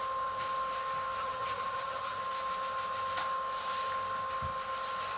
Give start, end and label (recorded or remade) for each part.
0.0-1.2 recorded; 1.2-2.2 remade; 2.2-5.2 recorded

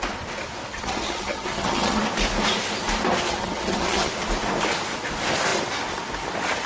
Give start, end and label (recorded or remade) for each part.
0.0-0.7 recorded; 0.7-2.0 remade; 2.0-3.3 recorded; 3.3-4.1 remade; 4.1-6.7 recorded

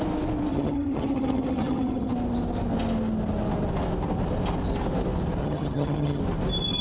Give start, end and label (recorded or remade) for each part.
0.0-0.5 recorded; 0.5-2.1 remade; 2.1-5.4 recorded; 5.4-6.2 remade; 6.2-6.8 recorded

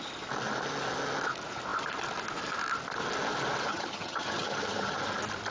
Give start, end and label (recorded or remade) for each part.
0.0-3.7 recorded; 3.7-5.0 remade; 5.0-5.5 recorded

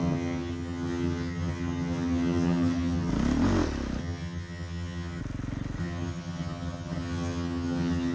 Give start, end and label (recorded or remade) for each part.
0.0-3.1 remade; 3.1-4.0 recorded; 4.0-5.2 remade; 5.2-5.8 recorded; 5.8-8.1 remade

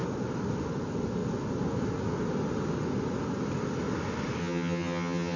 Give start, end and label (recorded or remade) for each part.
0.0-4.4 recorded; 4.4-5.4 remade